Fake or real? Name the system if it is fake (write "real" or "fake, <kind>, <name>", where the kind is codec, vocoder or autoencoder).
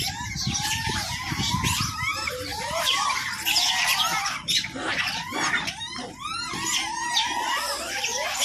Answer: fake, vocoder, BigVGAN v2